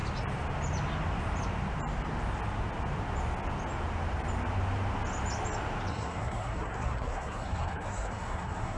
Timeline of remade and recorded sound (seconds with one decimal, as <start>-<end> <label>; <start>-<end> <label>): 0.0-5.9 recorded; 5.9-8.8 remade